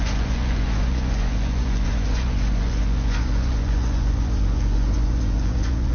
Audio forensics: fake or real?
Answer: fake